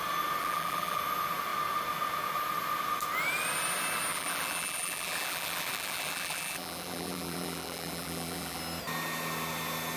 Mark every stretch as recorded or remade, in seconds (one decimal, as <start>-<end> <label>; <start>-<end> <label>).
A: 0.0-0.4 recorded; 0.4-1.0 remade; 1.0-4.1 recorded; 4.1-8.6 remade; 8.6-10.0 recorded